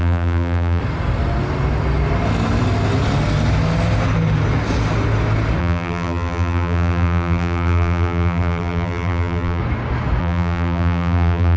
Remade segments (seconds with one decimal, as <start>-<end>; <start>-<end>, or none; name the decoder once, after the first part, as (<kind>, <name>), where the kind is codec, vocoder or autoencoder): 0.0-0.8 (vocoder, BigVGAN v2); 5.6-9.6; 10.2-11.6